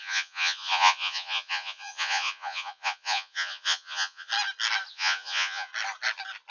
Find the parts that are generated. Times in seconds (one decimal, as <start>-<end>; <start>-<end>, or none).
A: 0.0-4.3; 4.9-5.7